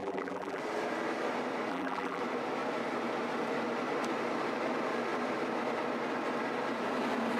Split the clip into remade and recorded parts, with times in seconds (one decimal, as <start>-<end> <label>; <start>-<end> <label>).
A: 0.0-0.6 remade; 0.6-1.7 recorded; 1.7-2.2 remade; 2.2-7.4 recorded